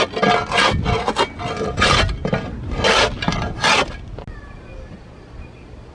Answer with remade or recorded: recorded